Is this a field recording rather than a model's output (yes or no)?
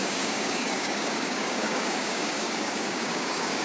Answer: no